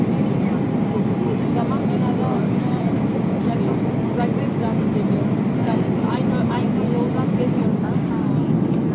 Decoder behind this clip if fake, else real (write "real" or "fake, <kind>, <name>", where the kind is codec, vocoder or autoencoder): real